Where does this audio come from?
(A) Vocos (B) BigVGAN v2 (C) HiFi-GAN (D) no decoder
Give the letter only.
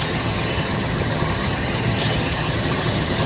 C